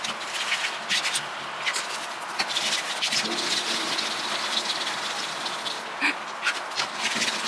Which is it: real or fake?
real